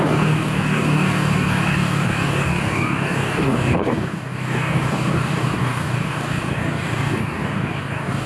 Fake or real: fake